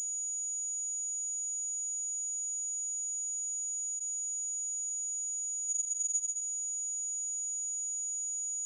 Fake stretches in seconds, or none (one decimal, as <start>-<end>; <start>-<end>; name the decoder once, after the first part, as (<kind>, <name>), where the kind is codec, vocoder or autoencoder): 5.7-6.4 (vocoder, Vocos)